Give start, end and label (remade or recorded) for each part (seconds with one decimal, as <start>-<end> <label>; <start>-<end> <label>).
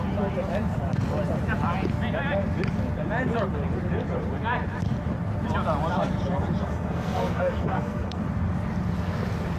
0.0-6.6 recorded; 6.6-8.2 remade; 8.2-9.6 recorded